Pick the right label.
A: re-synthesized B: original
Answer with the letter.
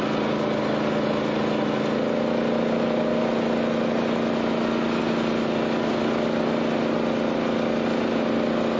B